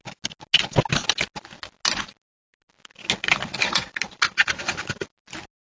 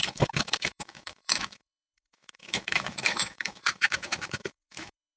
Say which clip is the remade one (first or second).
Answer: second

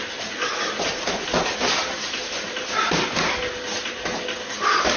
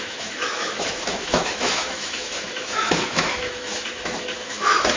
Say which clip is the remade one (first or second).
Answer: second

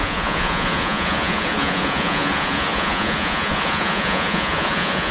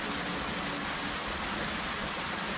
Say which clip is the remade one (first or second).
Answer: first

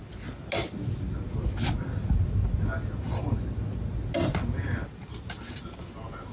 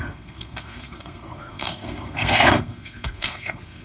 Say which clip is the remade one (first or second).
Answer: second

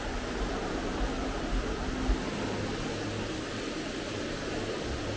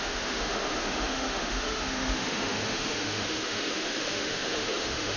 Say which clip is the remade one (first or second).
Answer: second